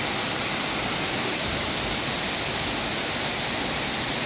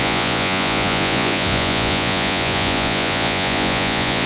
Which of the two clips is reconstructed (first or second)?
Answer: second